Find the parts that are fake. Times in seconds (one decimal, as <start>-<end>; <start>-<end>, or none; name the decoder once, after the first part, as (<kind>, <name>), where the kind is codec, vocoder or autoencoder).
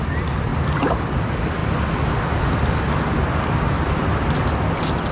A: none